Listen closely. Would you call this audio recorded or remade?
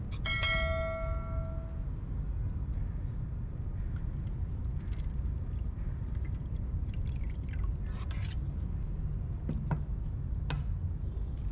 recorded